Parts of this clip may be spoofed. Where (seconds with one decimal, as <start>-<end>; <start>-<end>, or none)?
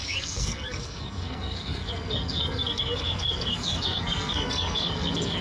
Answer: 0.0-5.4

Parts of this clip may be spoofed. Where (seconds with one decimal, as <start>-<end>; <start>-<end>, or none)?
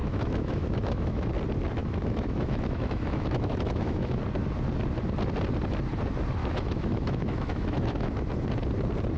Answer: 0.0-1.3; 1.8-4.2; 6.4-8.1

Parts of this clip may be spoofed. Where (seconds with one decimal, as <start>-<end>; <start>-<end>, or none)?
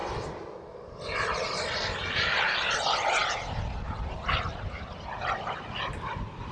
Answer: none